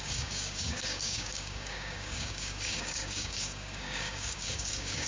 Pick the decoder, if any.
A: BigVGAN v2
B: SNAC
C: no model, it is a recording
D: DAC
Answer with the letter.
D